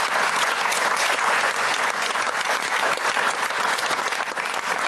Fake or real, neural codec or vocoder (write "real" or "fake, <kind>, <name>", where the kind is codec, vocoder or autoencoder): fake, vocoder, Vocos